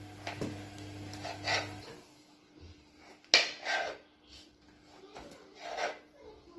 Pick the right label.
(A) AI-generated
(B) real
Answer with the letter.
B